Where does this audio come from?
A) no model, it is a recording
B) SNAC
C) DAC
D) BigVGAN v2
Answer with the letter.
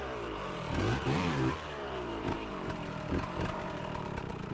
D